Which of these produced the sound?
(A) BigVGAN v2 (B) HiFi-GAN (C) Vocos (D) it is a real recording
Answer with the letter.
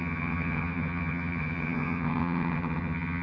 B